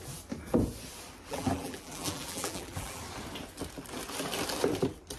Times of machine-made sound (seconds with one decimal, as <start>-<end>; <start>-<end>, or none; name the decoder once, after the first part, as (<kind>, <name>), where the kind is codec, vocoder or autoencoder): 1.3-3.0 (vocoder, BigVGAN v2)

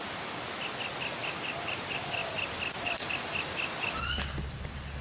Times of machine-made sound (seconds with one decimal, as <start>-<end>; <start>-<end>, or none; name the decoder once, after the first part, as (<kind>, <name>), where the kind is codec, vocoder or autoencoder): 0.9-1.7 (vocoder, BigVGAN v2); 2.2-3.1

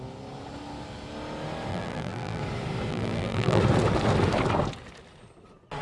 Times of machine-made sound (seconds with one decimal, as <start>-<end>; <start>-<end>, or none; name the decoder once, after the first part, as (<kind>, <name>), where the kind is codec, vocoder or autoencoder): 1.7-2.4 (vocoder, BigVGAN v2); 2.9-3.6

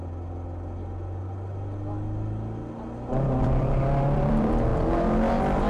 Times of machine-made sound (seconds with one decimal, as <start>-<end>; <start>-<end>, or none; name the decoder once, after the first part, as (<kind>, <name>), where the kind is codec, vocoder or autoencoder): 3.4-4.7 (vocoder, BigVGAN v2)

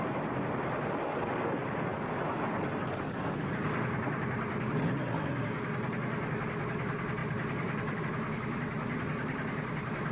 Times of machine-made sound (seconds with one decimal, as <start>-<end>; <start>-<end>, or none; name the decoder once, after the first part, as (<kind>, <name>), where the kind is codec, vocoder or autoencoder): 3.6-4.8 (vocoder, BigVGAN v2); 7.2-8.0

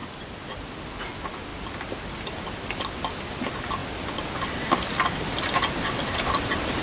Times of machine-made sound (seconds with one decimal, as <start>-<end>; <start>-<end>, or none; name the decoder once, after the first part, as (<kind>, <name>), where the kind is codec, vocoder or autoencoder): 1.5-3.1 (vocoder, BigVGAN v2)